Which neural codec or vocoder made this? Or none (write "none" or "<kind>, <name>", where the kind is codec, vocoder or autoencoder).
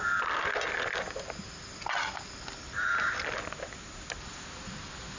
none